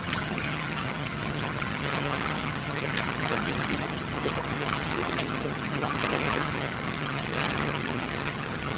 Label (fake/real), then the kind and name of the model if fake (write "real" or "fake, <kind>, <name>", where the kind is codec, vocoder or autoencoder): fake, vocoder, HiFi-GAN